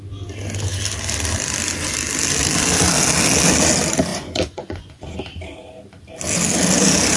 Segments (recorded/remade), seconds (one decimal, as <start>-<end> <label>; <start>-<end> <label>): 0.0-4.1 recorded; 4.1-5.1 remade; 5.1-7.2 recorded